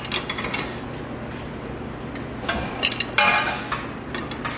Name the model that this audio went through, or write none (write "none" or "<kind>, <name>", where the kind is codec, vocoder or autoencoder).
none